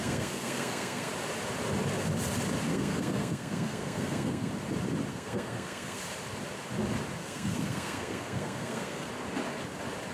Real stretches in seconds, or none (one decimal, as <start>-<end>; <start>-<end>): 1.1-2.7; 4.5-5.1; 6.0-7.2; 9.1-10.1